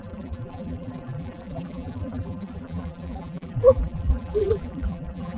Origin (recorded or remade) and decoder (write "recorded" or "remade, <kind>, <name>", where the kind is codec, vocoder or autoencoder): remade, vocoder, BigVGAN v2